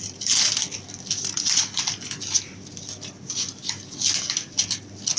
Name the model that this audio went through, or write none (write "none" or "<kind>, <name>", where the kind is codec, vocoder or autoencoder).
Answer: none